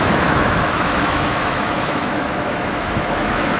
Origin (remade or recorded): remade